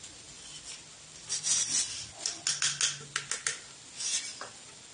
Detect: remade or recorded recorded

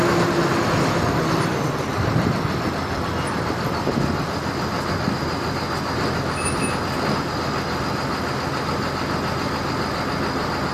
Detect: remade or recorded recorded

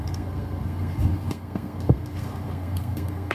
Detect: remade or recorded remade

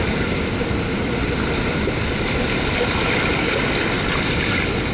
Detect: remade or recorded recorded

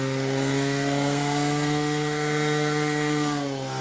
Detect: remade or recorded remade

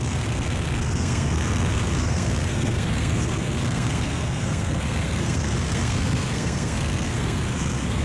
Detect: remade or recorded remade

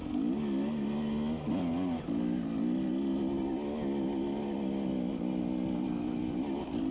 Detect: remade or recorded recorded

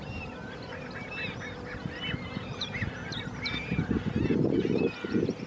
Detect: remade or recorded recorded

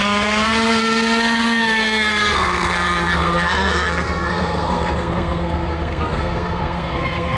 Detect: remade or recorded remade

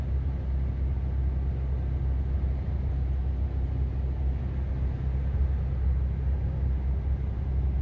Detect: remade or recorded recorded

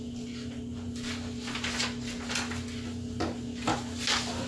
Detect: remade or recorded recorded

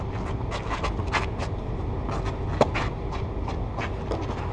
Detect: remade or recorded recorded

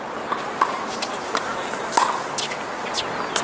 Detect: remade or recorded recorded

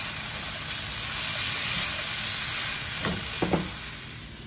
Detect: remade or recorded recorded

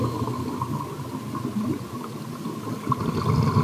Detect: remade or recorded recorded